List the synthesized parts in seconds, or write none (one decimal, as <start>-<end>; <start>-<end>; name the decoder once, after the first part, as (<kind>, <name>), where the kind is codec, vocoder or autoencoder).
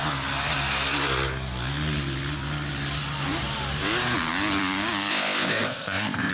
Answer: 5.1-6.3 (codec, ZipCodec)